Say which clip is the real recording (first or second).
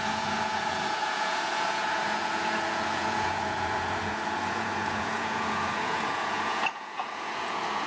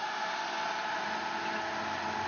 second